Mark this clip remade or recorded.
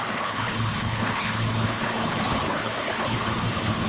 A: remade